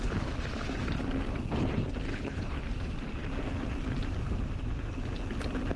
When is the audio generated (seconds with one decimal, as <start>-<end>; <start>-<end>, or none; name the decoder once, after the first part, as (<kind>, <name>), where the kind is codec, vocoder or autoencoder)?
2.1-2.6 (codec, HILCodec)